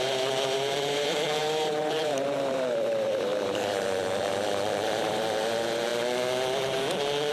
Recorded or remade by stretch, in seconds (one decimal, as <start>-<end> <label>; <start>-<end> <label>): 0.0-5.9 remade; 5.9-7.3 recorded